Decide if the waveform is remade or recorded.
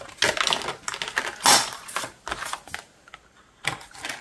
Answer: recorded